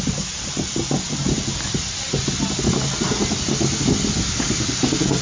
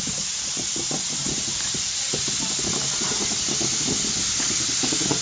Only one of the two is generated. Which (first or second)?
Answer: second